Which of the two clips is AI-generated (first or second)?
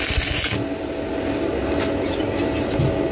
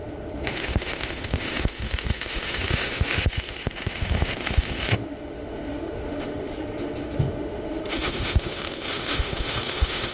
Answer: second